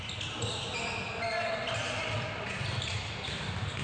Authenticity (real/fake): real